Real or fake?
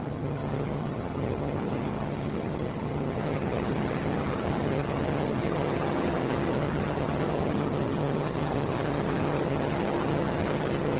fake